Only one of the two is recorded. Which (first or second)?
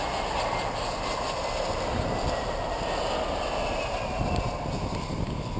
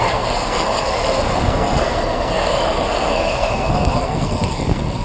first